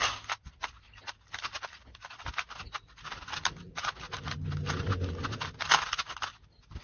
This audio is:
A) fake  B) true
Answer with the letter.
B